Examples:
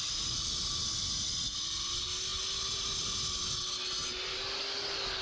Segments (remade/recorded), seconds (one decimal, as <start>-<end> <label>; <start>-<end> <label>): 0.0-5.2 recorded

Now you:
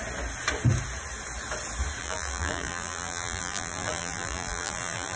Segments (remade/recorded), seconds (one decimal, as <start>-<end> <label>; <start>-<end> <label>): 0.0-2.0 recorded; 2.0-5.2 remade

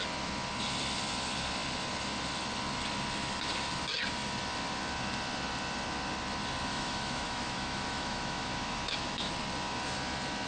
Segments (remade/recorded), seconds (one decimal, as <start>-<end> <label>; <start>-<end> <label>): 0.0-6.7 recorded; 6.7-9.3 remade; 9.3-10.5 recorded